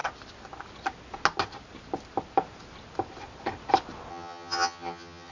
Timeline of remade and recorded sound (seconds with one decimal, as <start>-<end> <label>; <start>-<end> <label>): 0.0-4.1 recorded; 4.1-5.3 remade